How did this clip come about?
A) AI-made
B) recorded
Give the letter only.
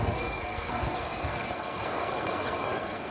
A